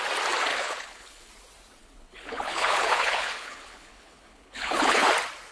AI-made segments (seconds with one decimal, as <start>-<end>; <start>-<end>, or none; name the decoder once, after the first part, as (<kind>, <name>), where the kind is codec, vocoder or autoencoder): 0.5-1.3 (codec, HILCodec); 1.8-5.1

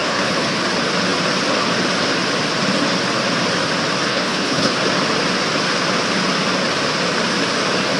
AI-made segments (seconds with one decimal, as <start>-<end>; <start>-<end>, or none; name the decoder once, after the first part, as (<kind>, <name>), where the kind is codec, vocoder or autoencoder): 0.0-0.6 (codec, HILCodec); 4.1-4.8

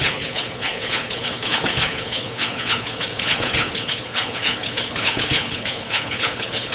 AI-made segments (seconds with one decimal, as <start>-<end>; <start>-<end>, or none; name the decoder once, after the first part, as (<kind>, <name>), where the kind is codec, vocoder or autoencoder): 0.0-6.7 (codec, HILCodec)

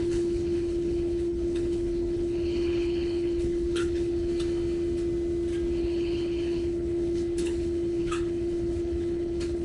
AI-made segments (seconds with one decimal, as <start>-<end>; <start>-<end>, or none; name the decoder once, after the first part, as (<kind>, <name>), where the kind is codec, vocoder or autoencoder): 0.0-4.3 (codec, HILCodec); 5.8-9.6